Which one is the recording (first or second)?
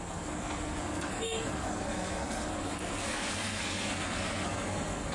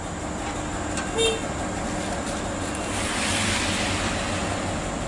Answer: second